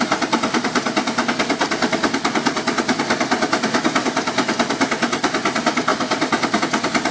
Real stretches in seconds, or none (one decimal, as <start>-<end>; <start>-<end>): 0.0-1.6; 4.0-5.9; 6.6-7.1